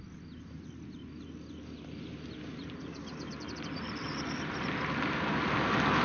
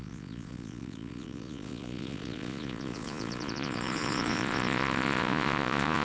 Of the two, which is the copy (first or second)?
second